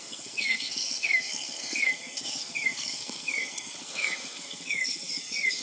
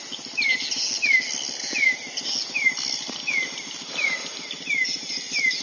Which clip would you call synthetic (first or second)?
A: first